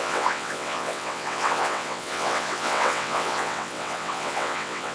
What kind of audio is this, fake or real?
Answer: fake